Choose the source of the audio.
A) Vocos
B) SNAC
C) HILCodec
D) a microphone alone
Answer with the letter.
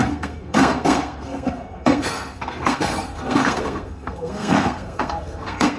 B